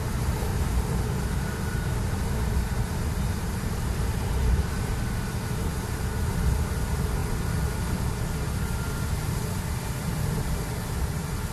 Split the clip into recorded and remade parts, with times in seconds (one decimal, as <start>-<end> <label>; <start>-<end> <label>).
0.0-0.5 recorded; 0.5-4.7 remade; 4.7-11.5 recorded